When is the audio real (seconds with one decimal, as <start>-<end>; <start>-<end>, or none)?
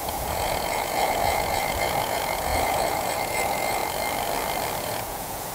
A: 3.8-4.8